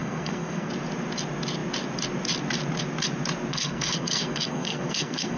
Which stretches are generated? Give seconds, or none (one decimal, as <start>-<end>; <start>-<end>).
0.0-0.7; 3.5-5.4